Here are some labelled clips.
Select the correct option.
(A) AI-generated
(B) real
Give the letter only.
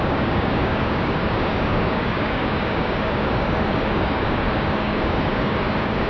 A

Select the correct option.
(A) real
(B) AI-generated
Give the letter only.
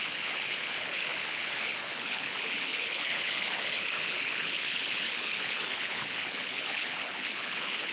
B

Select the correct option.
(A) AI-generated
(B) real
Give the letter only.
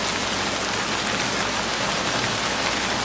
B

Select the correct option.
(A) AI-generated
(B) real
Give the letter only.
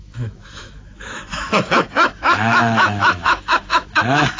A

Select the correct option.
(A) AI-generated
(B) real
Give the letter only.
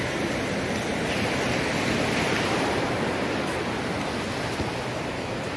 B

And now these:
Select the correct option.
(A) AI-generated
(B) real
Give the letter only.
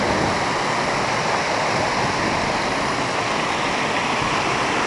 B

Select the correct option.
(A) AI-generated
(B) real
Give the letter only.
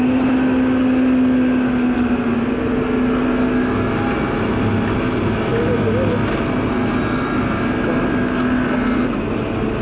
B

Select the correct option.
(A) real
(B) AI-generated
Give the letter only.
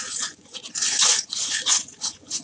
B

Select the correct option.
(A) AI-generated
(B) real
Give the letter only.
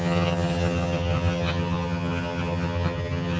A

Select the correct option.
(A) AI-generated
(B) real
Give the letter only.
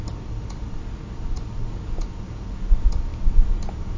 B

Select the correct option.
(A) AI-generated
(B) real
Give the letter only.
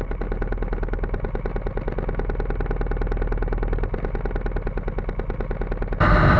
B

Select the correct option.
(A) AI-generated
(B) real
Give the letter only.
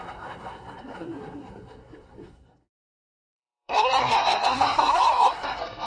A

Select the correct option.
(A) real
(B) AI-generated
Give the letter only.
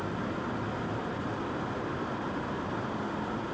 A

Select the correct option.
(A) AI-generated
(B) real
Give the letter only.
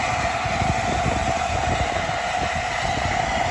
B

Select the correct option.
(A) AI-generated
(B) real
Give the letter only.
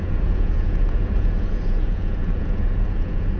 A